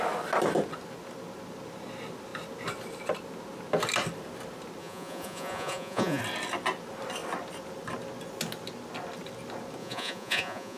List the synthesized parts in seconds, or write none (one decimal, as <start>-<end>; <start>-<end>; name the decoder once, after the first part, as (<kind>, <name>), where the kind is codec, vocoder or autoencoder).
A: 4.8-6.2 (vocoder, Vocos); 9.8-10.8